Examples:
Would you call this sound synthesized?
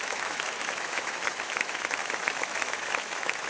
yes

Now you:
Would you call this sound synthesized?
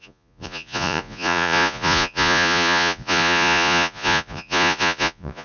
yes